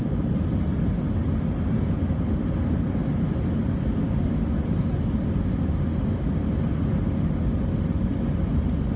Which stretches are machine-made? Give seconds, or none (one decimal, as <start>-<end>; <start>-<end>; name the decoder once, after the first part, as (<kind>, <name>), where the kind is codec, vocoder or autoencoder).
none